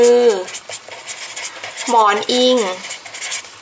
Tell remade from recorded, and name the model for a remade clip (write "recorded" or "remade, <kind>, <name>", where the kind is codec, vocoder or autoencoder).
recorded